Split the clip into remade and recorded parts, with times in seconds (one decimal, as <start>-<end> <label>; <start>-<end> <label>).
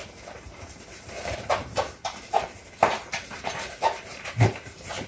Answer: 0.0-0.7 recorded; 0.7-5.1 remade